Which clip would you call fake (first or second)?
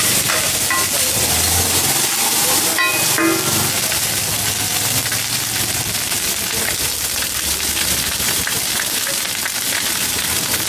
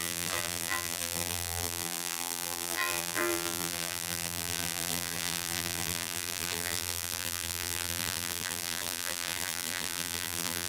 second